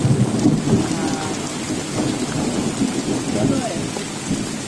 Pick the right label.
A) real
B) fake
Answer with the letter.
A